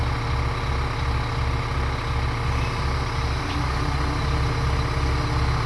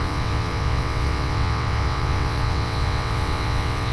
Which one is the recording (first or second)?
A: first